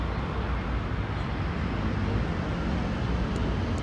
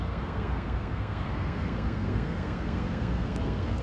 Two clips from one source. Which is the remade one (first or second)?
second